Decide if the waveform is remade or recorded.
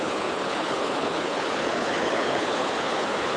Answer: remade